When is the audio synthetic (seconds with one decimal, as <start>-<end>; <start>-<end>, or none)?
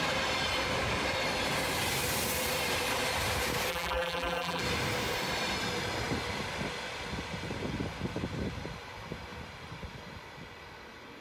3.7-4.6